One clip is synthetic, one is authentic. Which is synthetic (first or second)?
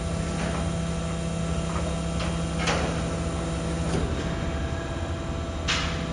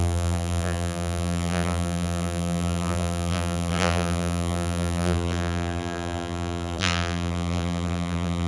second